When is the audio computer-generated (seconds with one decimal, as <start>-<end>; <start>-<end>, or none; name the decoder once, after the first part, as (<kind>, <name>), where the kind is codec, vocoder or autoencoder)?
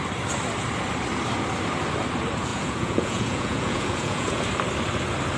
2.5-4.4 (vocoder, Vocos)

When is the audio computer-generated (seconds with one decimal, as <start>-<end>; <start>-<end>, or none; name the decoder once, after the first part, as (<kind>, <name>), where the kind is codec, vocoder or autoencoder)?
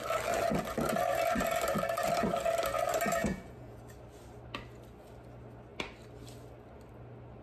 3.2-3.8 (vocoder, Vocos)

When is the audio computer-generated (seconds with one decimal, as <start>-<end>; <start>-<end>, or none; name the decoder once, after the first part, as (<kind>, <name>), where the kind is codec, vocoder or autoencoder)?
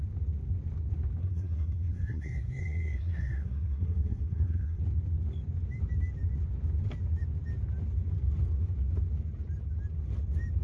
1.2-4.8 (codec, SNAC)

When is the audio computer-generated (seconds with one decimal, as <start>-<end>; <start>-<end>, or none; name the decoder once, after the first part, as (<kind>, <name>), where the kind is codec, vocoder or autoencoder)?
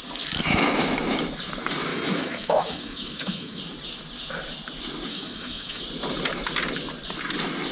1.9-3.6 (autoencoder, DAC-VAE); 5.1-5.8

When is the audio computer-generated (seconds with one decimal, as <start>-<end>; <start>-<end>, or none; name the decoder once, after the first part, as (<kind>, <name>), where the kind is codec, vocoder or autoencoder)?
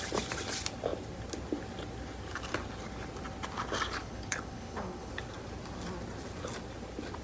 4.0-5.1 (codec, HILCodec)